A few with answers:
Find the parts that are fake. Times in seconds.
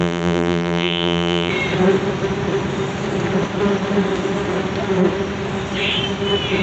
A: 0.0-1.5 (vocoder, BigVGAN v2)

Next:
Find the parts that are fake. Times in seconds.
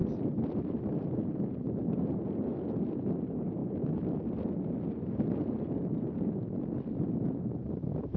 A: none